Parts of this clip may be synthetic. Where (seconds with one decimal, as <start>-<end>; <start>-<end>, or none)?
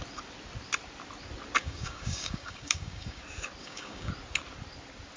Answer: 1.6-3.2; 3.6-4.1